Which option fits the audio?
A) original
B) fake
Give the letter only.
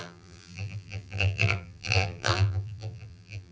B